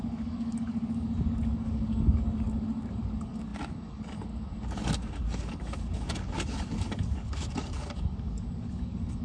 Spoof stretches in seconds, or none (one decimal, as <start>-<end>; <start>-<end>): 0.0-9.2

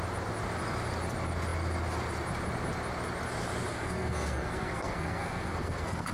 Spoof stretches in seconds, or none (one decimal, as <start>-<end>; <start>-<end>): 3.7-6.1

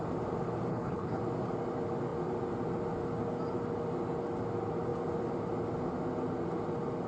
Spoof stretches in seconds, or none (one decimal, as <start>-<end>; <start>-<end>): 0.7-1.2